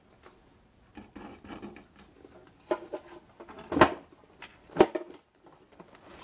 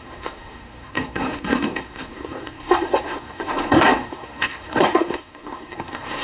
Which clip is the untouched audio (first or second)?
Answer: first